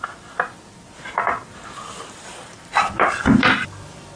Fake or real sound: real